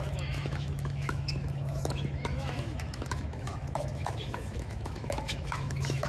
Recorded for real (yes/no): no